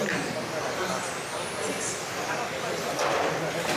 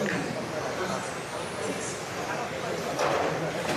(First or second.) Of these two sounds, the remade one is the second